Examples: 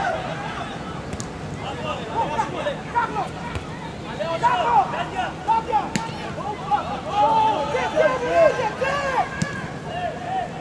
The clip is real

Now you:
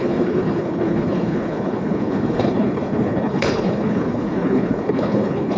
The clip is fake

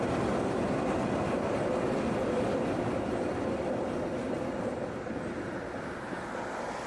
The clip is real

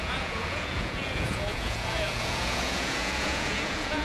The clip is fake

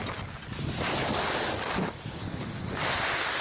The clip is real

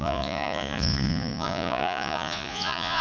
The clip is fake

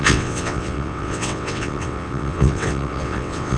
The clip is fake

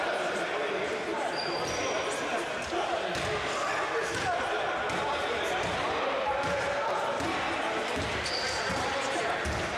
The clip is real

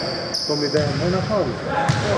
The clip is real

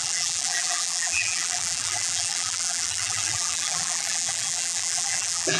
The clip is fake